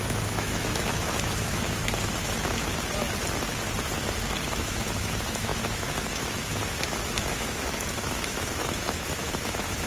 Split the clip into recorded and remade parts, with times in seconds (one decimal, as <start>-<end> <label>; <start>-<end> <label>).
0.0-2.7 remade; 2.7-4.5 recorded; 4.5-9.9 remade